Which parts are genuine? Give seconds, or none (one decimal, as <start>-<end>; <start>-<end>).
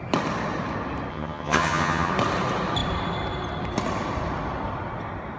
0.0-1.1; 2.1-5.4